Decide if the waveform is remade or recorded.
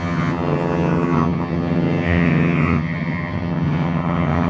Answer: remade